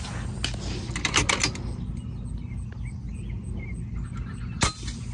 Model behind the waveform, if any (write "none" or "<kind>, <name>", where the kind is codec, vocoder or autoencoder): none